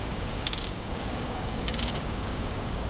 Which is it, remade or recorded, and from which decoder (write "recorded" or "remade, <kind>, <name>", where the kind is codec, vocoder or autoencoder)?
remade, codec, DAC